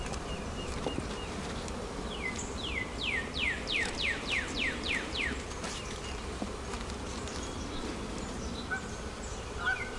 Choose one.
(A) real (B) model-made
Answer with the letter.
B